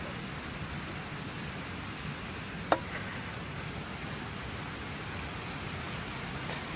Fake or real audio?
real